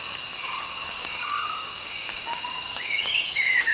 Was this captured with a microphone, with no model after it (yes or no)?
no